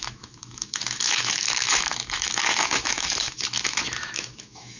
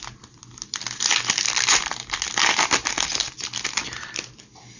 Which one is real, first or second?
second